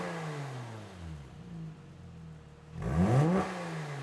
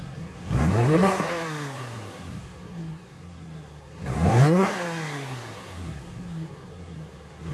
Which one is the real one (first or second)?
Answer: first